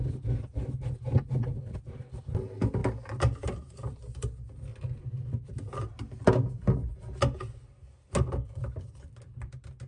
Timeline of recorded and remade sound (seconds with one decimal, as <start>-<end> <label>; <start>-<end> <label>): 0.0-9.9 recorded